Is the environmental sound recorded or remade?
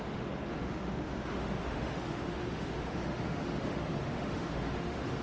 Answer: remade